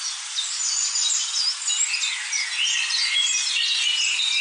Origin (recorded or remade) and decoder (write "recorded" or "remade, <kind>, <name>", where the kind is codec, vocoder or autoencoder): recorded